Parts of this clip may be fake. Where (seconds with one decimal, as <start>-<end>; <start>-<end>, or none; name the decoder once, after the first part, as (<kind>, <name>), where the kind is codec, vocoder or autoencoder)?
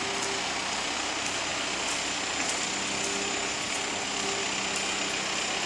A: none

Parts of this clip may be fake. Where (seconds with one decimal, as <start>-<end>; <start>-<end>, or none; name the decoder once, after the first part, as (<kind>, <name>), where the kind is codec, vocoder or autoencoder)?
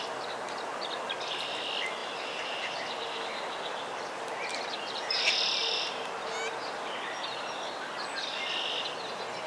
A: 2.0-3.2 (vocoder, BigVGAN v2); 5.6-6.1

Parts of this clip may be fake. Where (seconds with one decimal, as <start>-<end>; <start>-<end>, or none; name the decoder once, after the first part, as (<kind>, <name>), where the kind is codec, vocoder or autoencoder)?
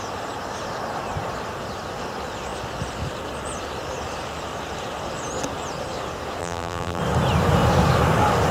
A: 6.4-7.0 (vocoder, BigVGAN v2)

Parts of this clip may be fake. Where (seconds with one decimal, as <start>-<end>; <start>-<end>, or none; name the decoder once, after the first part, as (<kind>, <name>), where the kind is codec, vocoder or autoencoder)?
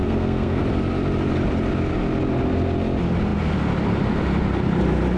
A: 0.0-0.6 (codec, SNAC)